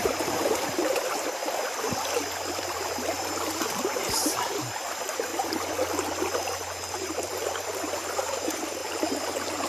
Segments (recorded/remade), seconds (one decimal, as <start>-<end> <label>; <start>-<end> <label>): 0.0-1.4 remade; 1.4-2.5 recorded; 2.5-5.3 remade; 5.3-6.9 recorded; 6.9-8.8 remade; 8.8-9.7 recorded